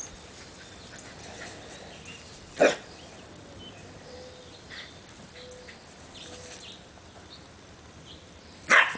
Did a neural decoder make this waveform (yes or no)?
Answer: no